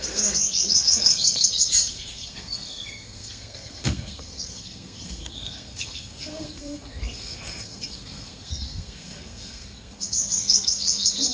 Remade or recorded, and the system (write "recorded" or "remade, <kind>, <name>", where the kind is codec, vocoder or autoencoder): remade, codec, SNAC